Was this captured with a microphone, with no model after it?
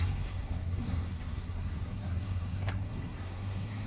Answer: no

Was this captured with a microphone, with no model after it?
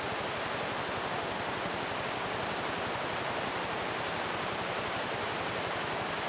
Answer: yes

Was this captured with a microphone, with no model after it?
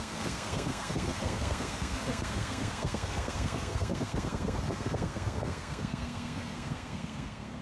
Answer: no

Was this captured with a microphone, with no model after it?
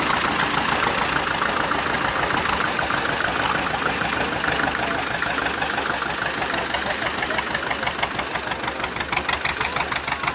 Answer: yes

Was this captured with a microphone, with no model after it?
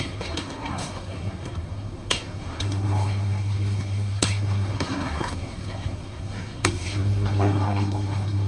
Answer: no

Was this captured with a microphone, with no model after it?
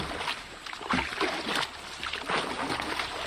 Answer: yes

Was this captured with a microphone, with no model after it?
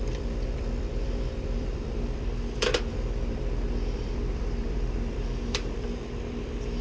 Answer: no